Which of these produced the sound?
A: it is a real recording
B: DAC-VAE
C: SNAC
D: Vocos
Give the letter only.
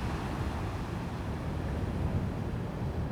A